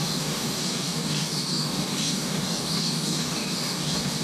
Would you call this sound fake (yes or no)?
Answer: yes